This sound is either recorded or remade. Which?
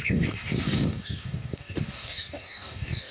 remade